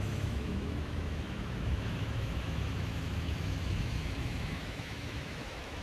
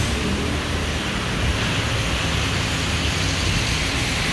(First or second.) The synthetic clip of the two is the first